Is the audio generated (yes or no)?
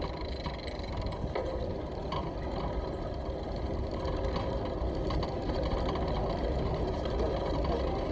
no